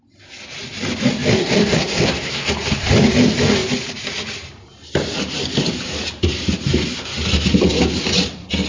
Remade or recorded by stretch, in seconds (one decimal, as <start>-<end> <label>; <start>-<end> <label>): 0.0-1.4 recorded; 1.4-2.5 remade; 2.5-8.7 recorded

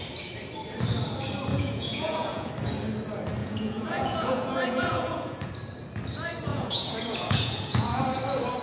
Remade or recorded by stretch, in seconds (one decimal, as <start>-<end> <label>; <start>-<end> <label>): 0.0-1.5 recorded; 1.5-2.5 remade; 2.5-3.4 recorded; 3.4-5.5 remade; 5.5-6.5 recorded; 6.5-8.0 remade; 8.0-8.6 recorded

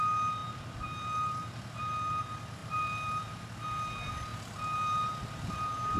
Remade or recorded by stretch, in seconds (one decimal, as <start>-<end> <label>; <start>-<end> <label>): 0.0-0.4 recorded; 0.4-1.8 remade; 1.8-2.6 recorded; 2.6-3.5 remade; 3.5-4.3 recorded; 4.3-6.0 remade

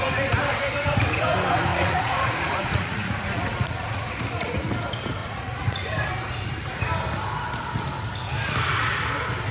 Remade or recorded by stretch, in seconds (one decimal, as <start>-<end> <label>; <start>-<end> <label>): 0.0-1.7 recorded; 1.7-4.7 remade; 4.7-5.2 recorded; 5.2-5.9 remade; 5.9-9.5 recorded

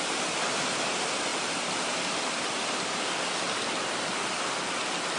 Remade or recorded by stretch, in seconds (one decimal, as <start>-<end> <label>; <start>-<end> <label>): 0.0-5.2 recorded